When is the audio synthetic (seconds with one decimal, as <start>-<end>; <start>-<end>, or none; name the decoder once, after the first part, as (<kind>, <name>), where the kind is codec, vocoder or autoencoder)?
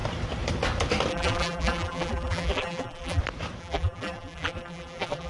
1.1-3.2 (vocoder, BigVGAN v2); 3.6-5.3